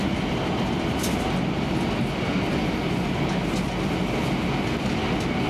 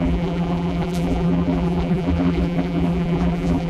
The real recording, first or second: first